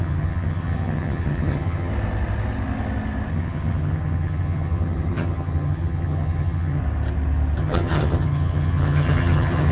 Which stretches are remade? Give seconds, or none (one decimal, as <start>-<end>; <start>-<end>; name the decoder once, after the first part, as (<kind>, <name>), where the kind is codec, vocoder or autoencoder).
0.0-1.9 (vocoder, HiFi-GAN); 3.3-6.8; 7.6-9.7